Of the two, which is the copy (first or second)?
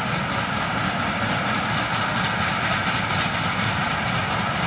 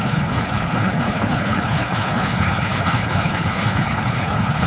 second